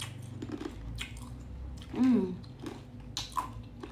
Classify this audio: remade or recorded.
recorded